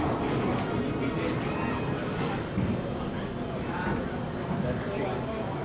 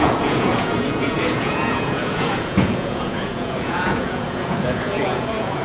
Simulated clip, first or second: second